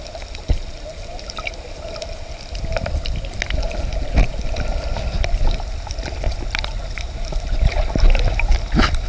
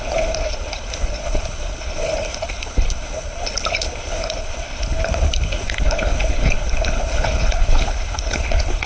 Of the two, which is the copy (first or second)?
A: second